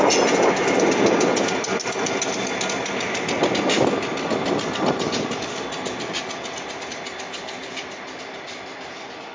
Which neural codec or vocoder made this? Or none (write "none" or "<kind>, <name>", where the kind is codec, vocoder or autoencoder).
none